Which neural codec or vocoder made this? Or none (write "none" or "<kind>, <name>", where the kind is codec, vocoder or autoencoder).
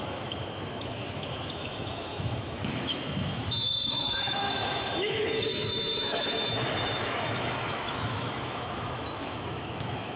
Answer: autoencoder, DAC-VAE